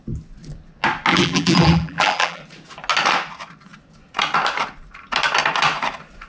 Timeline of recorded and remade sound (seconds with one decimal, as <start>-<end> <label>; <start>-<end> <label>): 0.0-1.1 recorded; 1.1-2.4 remade; 2.4-6.3 recorded